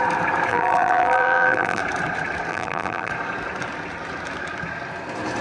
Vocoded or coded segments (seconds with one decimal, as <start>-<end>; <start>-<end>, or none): 0.5-1.8; 2.5-3.1

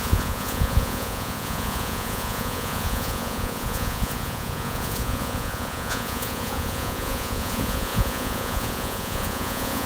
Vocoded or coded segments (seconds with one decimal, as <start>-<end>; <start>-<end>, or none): 0.0-9.9